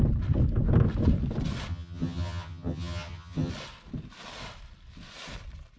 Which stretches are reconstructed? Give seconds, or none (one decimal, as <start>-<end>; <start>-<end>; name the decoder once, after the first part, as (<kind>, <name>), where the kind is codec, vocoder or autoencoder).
1.7-3.5 (vocoder, HiFi-GAN)